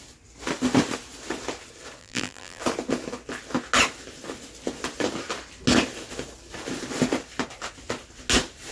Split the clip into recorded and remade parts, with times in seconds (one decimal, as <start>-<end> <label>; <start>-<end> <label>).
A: 0.0-2.0 recorded; 2.0-2.6 remade; 2.6-8.7 recorded